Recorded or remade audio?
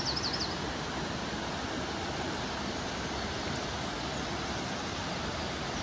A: recorded